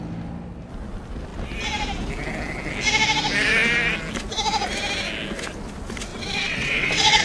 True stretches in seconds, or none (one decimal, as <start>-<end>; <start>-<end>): 0.0-6.1